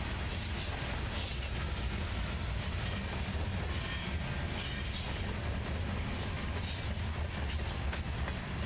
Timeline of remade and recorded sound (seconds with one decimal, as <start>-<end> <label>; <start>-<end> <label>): 0.0-8.7 recorded